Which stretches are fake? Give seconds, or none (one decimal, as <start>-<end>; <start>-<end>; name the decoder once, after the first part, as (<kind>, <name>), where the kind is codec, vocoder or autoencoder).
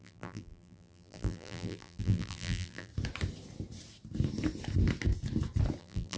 0.0-2.9 (vocoder, BigVGAN v2); 5.8-6.2